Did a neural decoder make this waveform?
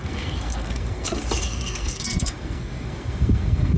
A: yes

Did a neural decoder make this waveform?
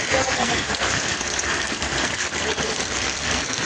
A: yes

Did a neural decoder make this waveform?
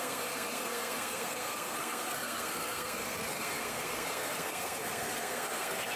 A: yes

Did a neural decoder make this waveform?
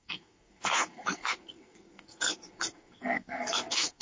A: yes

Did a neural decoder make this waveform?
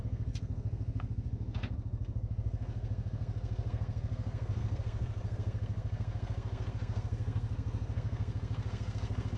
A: yes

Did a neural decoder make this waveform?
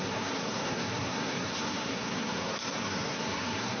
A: yes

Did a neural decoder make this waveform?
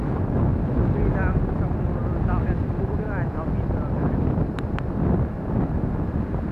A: no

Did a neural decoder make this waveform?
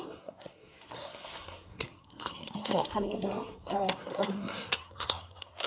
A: yes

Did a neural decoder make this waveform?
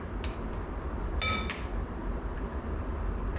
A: no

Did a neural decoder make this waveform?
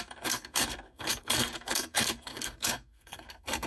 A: yes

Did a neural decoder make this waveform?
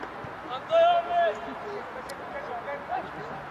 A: no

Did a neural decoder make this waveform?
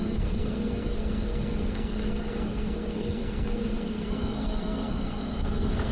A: yes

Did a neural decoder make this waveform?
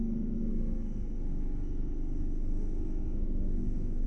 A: yes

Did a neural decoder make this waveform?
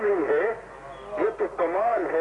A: no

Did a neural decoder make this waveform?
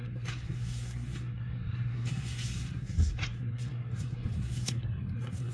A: yes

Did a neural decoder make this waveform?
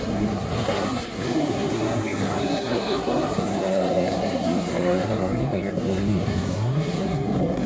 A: yes